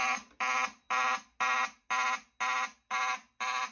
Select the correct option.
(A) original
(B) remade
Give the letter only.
A